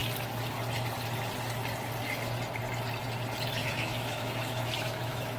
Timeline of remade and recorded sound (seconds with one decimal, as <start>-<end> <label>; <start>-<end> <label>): 0.0-3.6 recorded; 3.6-5.4 remade